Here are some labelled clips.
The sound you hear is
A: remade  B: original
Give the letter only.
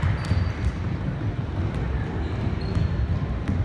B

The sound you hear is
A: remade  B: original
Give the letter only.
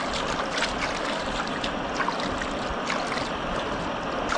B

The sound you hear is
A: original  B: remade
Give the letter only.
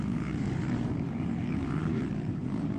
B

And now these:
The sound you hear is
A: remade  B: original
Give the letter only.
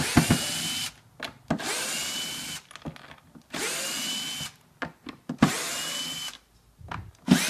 B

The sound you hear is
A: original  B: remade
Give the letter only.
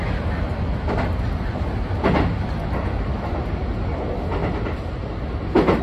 A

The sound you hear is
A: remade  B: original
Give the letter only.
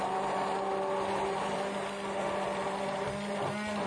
B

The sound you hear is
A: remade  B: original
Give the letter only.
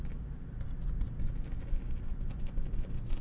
B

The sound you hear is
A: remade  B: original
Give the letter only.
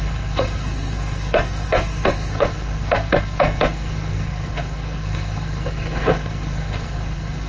A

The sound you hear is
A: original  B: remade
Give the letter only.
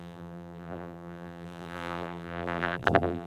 B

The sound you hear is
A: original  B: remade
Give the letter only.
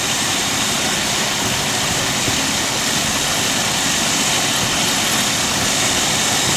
A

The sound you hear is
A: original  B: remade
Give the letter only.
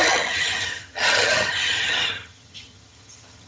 B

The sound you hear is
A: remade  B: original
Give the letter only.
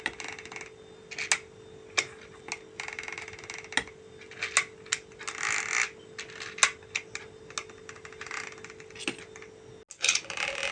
B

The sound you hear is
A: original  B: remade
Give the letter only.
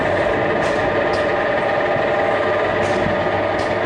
A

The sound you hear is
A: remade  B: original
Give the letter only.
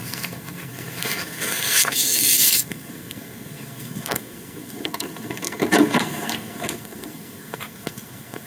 A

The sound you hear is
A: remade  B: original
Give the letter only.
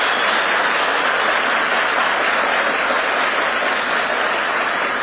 B